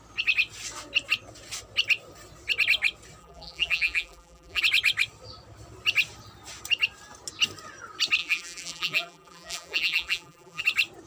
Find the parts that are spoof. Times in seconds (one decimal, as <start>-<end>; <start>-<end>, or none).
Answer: 3.2-4.6; 8.2-10.6